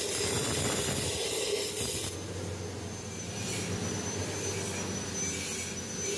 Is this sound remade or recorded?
recorded